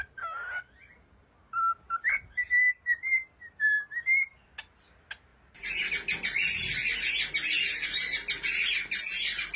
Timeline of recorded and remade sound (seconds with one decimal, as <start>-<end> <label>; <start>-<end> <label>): 0.0-5.3 recorded; 5.3-5.9 remade; 5.9-9.6 recorded